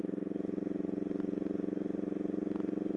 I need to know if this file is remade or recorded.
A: recorded